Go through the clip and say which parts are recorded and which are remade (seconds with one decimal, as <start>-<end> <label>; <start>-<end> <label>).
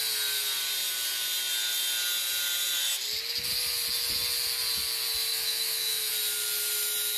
0.0-5.3 recorded; 5.3-6.1 remade; 6.1-7.2 recorded